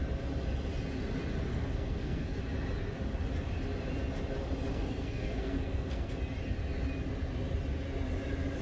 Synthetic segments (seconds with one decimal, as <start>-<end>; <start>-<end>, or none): 1.5-2.4; 4.7-6.2